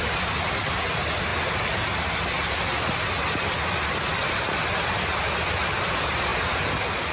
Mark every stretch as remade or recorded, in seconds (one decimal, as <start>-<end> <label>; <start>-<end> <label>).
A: 0.0-7.1 recorded